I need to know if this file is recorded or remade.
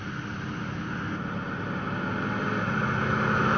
recorded